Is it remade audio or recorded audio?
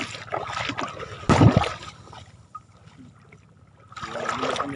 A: recorded